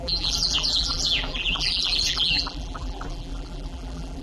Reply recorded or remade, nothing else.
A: remade